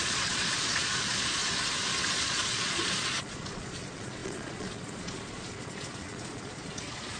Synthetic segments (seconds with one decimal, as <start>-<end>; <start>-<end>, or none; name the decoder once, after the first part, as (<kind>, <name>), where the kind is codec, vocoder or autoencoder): 0.0-1.4 (vocoder, Vocos); 2.0-7.2